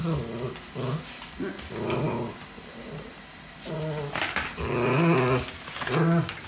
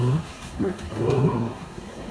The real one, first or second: first